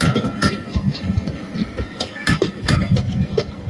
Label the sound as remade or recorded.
remade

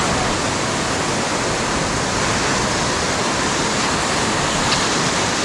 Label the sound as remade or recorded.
recorded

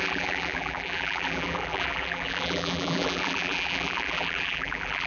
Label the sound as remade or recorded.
remade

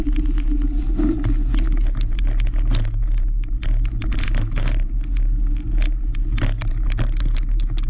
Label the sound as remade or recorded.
recorded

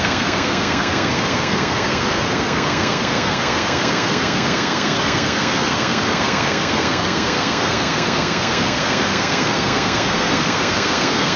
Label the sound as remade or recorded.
remade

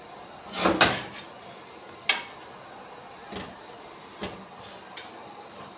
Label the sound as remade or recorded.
recorded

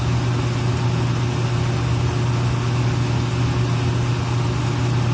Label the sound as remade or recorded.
recorded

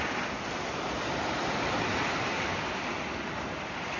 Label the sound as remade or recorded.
recorded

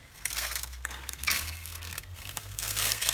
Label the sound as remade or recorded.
remade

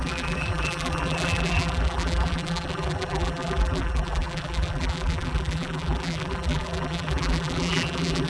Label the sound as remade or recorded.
remade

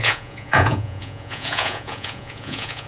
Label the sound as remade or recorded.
remade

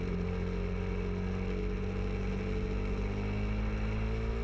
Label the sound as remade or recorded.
recorded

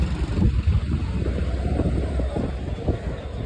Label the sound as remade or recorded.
recorded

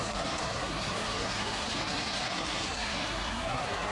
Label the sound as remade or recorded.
remade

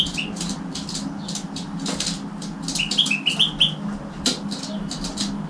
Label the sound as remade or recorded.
recorded